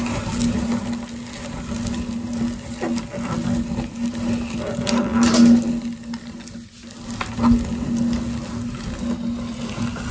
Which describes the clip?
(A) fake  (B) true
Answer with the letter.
B